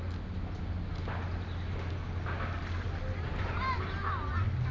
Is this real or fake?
real